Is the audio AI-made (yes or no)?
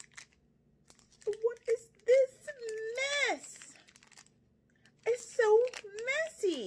no